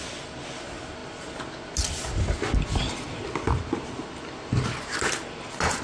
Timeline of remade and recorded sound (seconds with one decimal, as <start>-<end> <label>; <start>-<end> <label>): 0.0-5.8 recorded